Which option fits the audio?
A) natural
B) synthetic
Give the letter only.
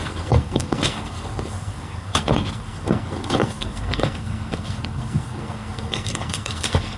B